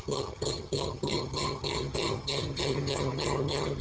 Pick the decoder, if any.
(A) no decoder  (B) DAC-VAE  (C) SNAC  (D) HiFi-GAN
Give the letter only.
D